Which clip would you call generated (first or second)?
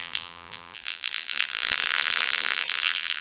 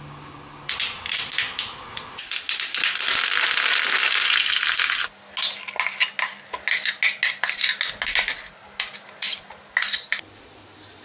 first